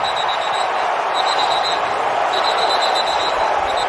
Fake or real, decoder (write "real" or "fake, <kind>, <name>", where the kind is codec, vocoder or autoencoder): real